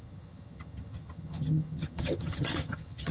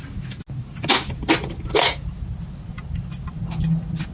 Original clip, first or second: second